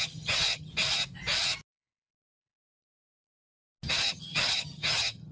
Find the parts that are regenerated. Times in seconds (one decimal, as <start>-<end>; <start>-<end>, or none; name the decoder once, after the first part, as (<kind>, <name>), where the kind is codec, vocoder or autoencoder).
0.0-0.7 (vocoder, HiFi-GAN); 3.9-5.3